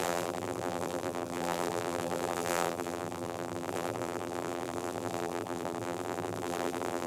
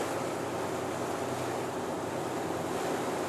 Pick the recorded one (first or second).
second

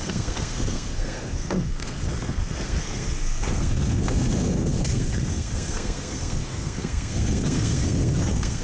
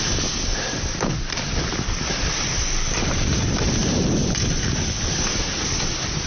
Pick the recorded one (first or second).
second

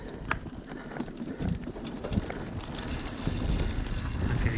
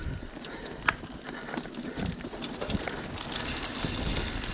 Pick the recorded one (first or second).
second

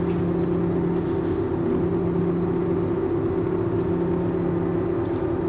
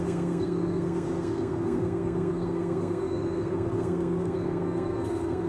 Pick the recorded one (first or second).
first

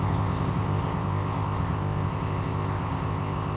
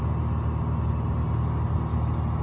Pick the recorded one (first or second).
second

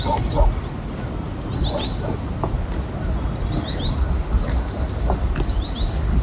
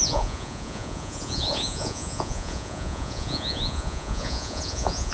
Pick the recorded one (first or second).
first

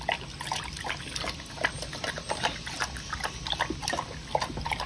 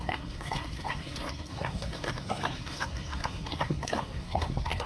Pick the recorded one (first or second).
first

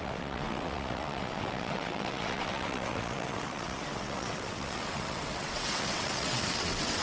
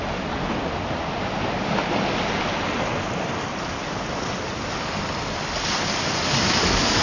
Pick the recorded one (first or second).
second